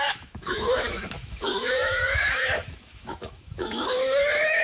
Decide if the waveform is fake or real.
fake